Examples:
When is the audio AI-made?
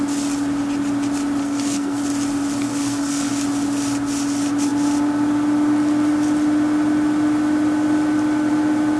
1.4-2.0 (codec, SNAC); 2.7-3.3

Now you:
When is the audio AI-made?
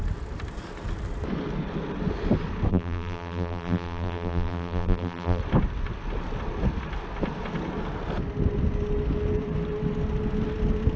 2.7-5.4 (vocoder, BigVGAN v2)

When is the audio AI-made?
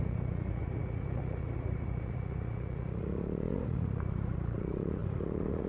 0.0-5.7 (vocoder, Vocos)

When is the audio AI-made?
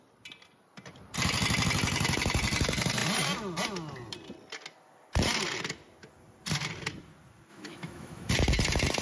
7.5-8.3 (autoencoder, DAC-VAE)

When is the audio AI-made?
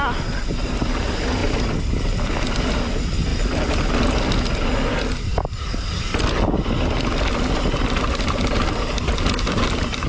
1.4-2.3 (vocoder, BigVGAN v2)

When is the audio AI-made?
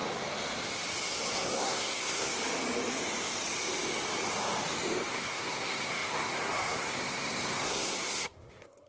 1.2-2.3 (codec, SNAC); 5.1-8.9